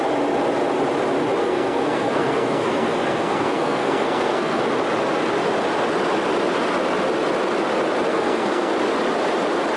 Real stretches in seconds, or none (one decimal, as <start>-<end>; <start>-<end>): 0.0-1.4; 4.6-8.1; 8.7-9.8